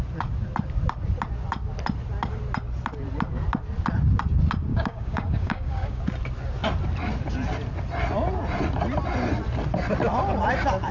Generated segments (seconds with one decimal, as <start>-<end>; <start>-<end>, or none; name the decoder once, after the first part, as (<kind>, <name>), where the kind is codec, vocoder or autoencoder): 4.7-6.0 (codec, DAC)